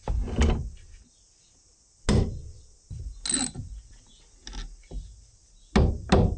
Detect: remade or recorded recorded